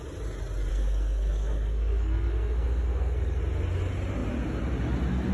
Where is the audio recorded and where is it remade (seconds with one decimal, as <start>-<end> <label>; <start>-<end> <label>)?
0.0-0.7 recorded; 0.7-3.4 remade; 3.4-5.3 recorded